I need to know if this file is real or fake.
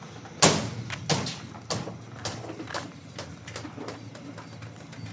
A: real